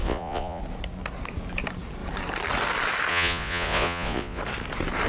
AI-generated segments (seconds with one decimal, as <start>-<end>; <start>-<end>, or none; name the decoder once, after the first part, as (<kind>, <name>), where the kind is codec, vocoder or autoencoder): 0.0-0.6 (vocoder, Vocos); 3.1-4.4